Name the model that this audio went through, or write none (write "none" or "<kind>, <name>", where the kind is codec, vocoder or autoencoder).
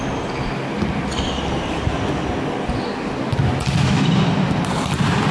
none